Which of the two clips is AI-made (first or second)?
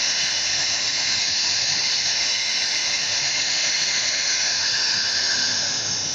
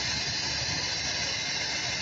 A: first